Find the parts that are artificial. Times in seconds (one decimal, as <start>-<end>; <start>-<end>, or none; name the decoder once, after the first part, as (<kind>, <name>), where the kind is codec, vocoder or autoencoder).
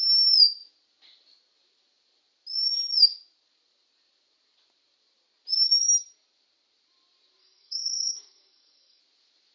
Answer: 7.4-9.0 (codec, SNAC)